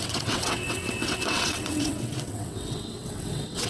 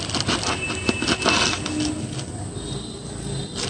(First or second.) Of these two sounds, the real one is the second